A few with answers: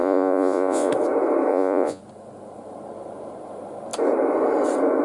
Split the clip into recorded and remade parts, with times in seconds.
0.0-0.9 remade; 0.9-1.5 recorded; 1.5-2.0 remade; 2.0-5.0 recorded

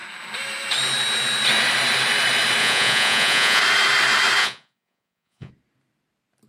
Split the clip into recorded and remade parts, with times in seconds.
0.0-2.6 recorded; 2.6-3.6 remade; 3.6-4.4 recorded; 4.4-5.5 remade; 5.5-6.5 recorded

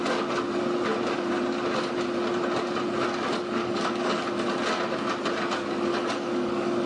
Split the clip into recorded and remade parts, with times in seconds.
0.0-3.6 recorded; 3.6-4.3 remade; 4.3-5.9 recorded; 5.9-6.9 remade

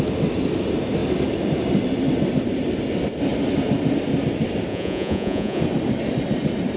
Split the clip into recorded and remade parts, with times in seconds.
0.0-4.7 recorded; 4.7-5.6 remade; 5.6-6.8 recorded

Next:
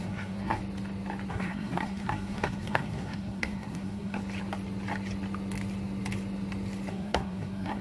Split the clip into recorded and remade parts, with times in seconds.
0.0-0.6 remade; 0.6-1.3 recorded; 1.3-4.2 remade; 4.2-6.9 recorded; 6.9-7.8 remade